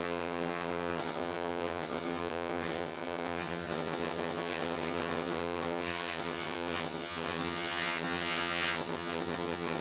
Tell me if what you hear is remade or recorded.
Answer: remade